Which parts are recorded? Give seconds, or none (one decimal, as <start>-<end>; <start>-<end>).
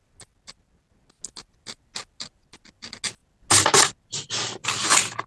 0.0-5.3